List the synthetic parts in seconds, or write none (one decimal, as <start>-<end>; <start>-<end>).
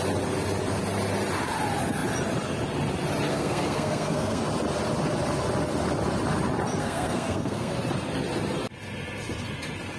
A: 3.3-4.4; 6.8-7.7